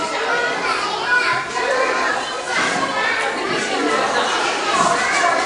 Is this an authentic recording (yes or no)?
no